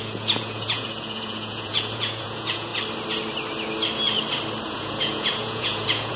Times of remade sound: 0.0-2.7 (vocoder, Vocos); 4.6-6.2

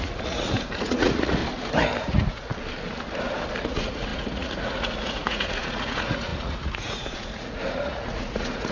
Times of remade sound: 0.0-1.4 (vocoder, Vocos); 2.0-2.5; 3.6-8.7

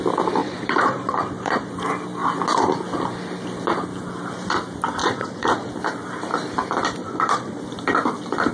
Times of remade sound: 0.4-1.7 (vocoder, Vocos); 5.0-5.7; 7.0-7.6

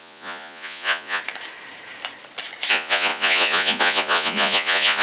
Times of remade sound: 0.0-1.2 (vocoder, Vocos); 2.7-5.0

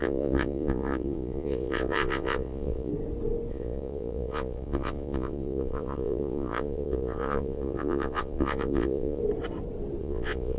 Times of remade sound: 0.0-2.9 (vocoder, Vocos); 3.5-9.2; 10.0-10.6

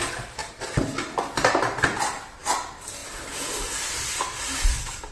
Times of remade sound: none

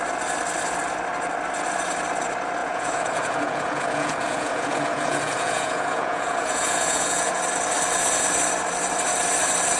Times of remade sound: 2.6-7.4 (vocoder, Vocos)